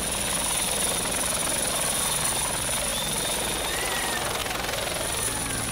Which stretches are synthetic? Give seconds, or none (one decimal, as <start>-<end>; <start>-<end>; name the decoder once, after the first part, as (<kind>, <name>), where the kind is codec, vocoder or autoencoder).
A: 1.4-2.0 (vocoder, BigVGAN v2); 4.4-5.7